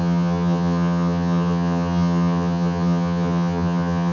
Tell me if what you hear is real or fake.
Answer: fake